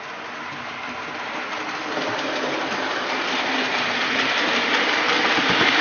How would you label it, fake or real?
real